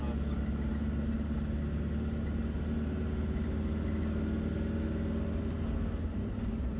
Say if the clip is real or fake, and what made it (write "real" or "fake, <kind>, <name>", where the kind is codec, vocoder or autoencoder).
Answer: real